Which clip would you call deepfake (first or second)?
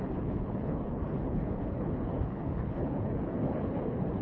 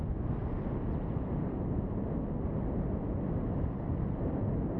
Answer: first